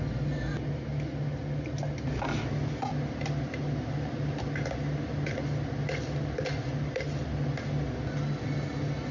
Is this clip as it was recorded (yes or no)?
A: yes